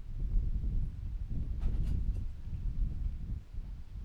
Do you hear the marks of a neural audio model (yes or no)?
no